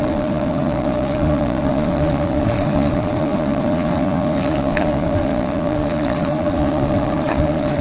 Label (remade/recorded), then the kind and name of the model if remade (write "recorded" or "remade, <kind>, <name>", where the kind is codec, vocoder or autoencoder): remade, vocoder, Vocos